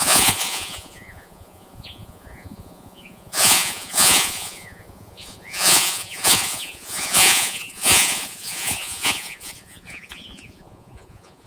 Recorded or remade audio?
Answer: remade